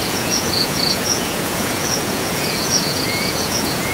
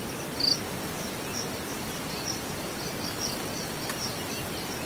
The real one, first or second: second